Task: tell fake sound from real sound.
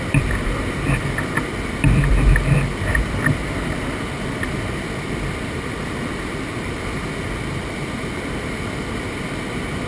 fake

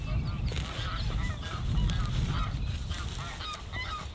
real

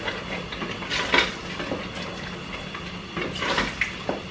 real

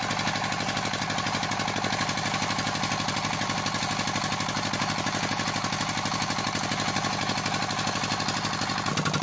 real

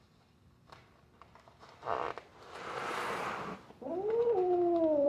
real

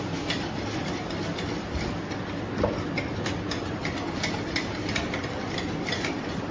fake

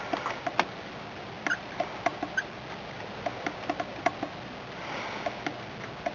real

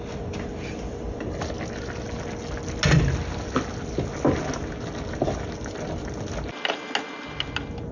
real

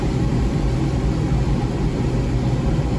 fake